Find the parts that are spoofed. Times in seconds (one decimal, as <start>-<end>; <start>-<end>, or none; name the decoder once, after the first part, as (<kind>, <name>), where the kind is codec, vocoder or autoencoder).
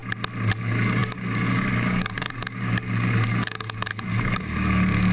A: 0.6-5.1 (codec, DAC)